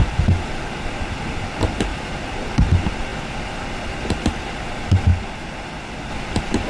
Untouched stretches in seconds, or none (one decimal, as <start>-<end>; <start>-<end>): 0.0-1.9; 2.5-6.7